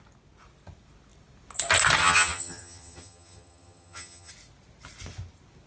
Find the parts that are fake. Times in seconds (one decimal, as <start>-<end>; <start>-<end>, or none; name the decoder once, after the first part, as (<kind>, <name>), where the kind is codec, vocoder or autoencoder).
2.0-4.3 (vocoder, HiFi-GAN)